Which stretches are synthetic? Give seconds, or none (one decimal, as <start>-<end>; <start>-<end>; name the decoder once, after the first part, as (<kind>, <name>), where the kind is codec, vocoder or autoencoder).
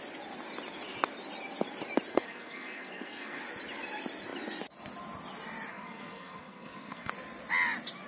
2.1-3.4 (codec, SNAC); 5.7-7.1